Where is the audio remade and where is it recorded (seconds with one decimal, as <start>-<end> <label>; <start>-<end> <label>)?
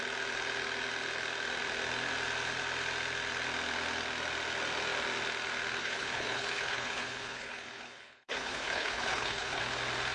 0.0-5.8 recorded; 5.8-9.6 remade; 9.6-10.1 recorded